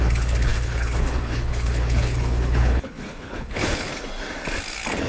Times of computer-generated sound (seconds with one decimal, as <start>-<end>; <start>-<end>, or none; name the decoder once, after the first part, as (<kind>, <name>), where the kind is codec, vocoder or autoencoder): 0.0-3.9 (codec, HILCodec)